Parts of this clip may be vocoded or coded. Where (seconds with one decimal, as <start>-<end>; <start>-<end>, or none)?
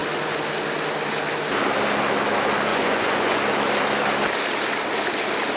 2.7-3.4